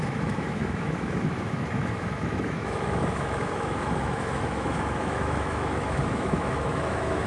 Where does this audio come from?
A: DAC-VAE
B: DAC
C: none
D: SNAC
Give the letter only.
A